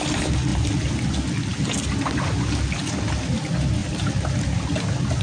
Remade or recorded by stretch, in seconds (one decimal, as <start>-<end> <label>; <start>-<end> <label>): 0.0-5.2 recorded